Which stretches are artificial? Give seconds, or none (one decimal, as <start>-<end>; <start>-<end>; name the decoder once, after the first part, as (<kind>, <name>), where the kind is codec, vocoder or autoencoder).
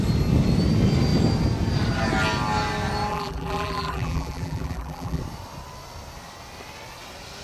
3.1-5.2 (vocoder, BigVGAN v2)